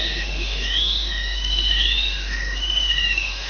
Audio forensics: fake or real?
fake